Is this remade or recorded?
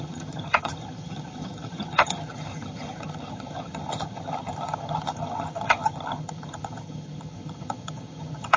remade